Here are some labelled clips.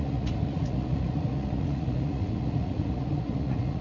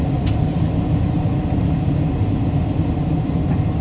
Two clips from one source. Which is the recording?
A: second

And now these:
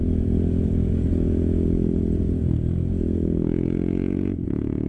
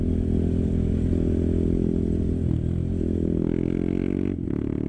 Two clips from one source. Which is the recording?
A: second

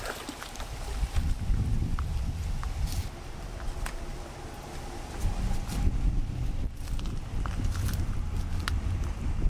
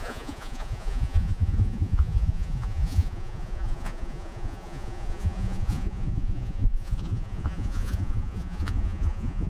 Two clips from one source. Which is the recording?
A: first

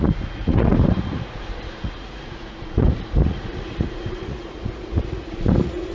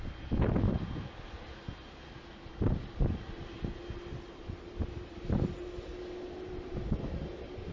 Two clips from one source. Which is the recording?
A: second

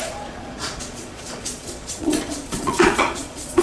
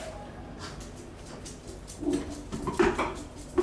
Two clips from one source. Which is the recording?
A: second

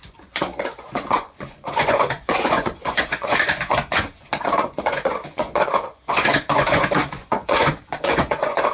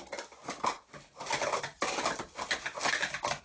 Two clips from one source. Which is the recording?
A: second